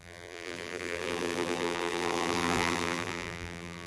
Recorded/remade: remade